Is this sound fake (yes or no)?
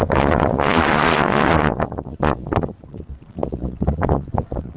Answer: yes